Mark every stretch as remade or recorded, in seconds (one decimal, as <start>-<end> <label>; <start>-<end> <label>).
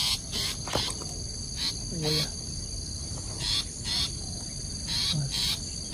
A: 0.0-1.7 remade; 1.7-4.7 recorded; 4.7-5.9 remade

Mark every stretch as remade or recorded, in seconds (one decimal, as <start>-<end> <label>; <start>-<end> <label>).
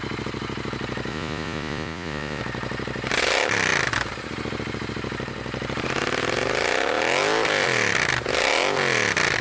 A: 0.0-1.1 recorded; 1.1-2.4 remade; 2.4-9.4 recorded